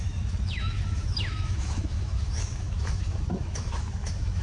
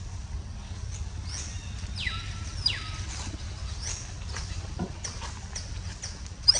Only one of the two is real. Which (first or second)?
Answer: second